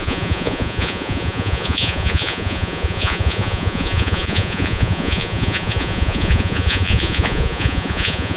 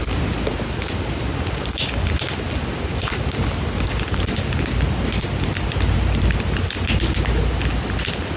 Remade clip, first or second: first